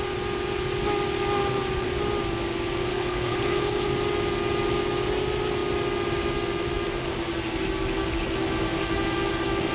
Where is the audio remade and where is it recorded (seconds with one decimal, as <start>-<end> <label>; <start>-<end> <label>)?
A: 0.0-2.9 recorded; 2.9-3.9 remade; 3.9-9.7 recorded